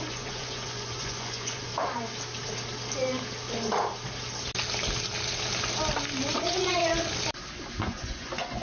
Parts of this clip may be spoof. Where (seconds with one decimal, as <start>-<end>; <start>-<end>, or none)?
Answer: 0.0-1.7; 6.3-6.9; 7.8-8.6